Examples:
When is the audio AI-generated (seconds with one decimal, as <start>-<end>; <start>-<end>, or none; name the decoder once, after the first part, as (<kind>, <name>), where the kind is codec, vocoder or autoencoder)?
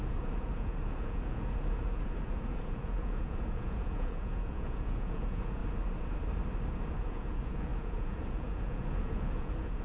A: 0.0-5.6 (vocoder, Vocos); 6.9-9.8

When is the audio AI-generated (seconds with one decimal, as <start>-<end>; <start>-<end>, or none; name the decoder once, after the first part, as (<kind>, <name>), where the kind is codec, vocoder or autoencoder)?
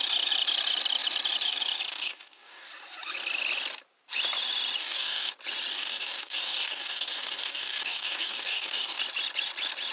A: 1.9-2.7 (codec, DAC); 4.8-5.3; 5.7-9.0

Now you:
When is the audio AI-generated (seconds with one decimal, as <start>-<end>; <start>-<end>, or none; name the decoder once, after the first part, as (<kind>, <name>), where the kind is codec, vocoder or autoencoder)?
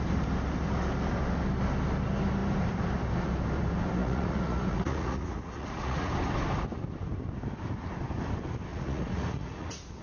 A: 4.0-6.1 (vocoder, Vocos); 8.7-10.0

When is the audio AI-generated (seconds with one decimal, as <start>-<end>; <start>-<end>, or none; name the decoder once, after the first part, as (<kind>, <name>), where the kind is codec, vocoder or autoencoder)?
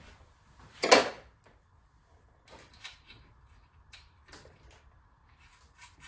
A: none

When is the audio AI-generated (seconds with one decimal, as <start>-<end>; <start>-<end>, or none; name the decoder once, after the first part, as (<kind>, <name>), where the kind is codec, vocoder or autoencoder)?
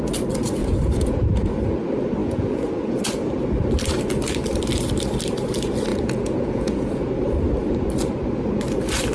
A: 0.6-1.5 (vocoder, Vocos); 2.2-3.0; 5.9-7.1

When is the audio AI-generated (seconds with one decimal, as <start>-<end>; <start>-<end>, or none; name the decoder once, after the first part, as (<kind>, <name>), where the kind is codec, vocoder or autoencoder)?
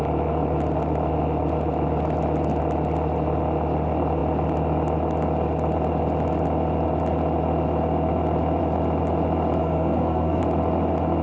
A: 9.6-10.4 (codec, SNAC)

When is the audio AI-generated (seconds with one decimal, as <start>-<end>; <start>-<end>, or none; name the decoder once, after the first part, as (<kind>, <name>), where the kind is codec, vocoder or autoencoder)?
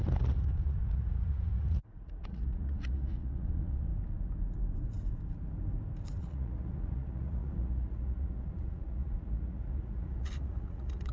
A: 0.0-3.9 (vocoder, Vocos); 6.2-11.1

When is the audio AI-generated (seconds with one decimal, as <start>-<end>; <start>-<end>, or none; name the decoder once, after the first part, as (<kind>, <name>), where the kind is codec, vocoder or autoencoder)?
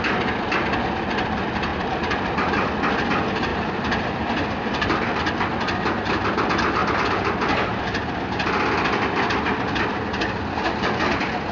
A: 1.7-2.5 (vocoder, BigVGAN v2); 3.5-5.3; 6.8-7.3